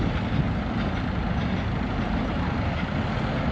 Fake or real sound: real